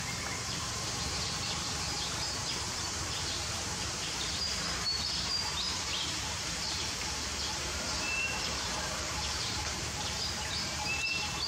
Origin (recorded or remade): remade